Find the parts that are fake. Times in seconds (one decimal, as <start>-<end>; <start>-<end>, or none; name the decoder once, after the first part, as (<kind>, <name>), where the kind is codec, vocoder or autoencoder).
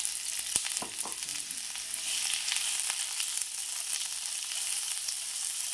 none